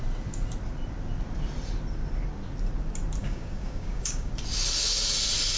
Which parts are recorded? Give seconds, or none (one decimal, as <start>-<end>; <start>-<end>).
0.0-3.2; 4.3-5.6

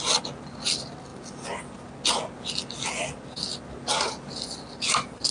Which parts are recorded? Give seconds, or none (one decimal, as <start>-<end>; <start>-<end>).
0.0-5.3

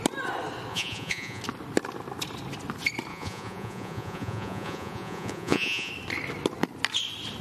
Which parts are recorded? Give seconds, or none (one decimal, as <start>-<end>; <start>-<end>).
0.0-0.7; 1.4-3.1; 5.9-7.4

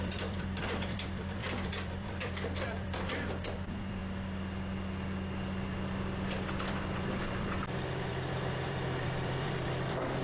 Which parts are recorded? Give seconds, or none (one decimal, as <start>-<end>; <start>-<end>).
4.0-6.7

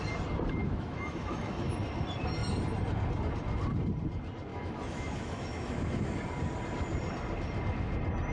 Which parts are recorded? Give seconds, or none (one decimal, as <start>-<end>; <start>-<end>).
0.0-0.6; 1.7-4.5; 6.2-8.3